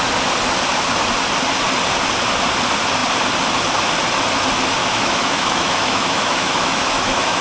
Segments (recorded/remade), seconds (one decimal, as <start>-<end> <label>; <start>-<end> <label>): 0.0-4.8 recorded; 4.8-7.4 remade